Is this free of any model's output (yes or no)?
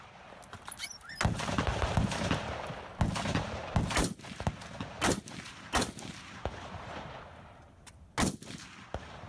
yes